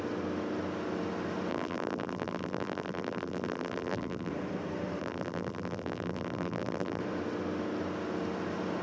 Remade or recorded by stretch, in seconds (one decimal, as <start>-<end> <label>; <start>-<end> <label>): 0.0-1.5 recorded; 1.5-4.3 remade; 4.3-5.0 recorded; 5.0-7.0 remade; 7.0-8.8 recorded